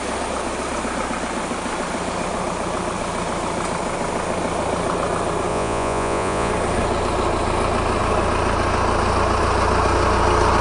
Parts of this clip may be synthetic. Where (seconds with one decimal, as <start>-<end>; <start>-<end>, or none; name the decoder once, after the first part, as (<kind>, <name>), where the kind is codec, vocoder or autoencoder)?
5.5-6.5 (vocoder, Vocos)